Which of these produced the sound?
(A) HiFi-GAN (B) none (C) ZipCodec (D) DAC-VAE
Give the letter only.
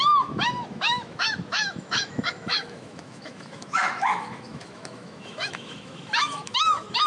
D